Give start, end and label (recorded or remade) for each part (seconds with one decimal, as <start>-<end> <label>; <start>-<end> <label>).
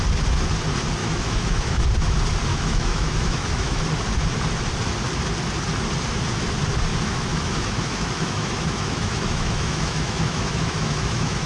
0.0-1.0 recorded; 1.0-1.8 remade; 1.8-2.5 recorded; 2.5-3.8 remade; 3.8-6.9 recorded; 6.9-11.5 remade